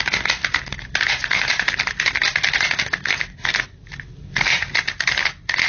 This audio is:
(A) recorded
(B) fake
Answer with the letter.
A